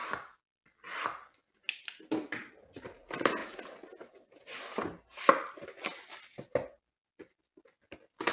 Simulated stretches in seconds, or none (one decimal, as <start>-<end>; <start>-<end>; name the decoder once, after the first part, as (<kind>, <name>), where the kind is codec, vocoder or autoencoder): none